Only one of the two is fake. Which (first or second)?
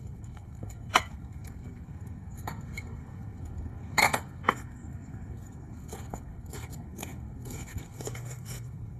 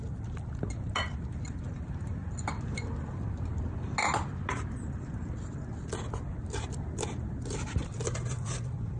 first